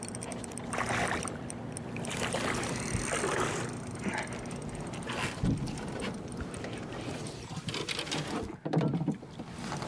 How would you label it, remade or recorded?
remade